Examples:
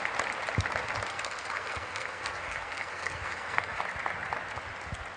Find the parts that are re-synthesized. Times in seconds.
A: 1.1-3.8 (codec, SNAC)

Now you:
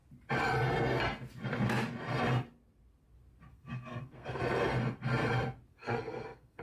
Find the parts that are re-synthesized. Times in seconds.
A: 3.5-4.4 (codec, SNAC); 5.7-6.6

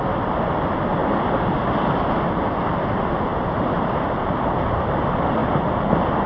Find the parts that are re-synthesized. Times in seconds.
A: none

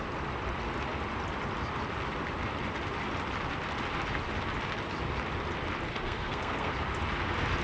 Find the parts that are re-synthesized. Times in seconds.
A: 5.9-6.7 (codec, SNAC)